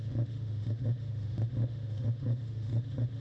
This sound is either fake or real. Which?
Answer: fake